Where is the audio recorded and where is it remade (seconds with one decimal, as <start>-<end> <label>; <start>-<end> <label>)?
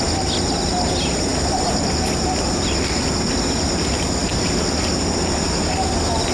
0.0-6.3 recorded